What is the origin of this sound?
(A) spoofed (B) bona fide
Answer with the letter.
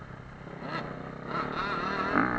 B